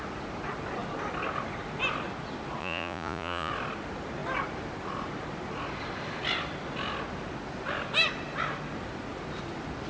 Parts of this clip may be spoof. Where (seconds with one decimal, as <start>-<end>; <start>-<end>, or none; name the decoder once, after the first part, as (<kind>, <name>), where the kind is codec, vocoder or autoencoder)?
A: 2.6-3.5 (vocoder, Vocos)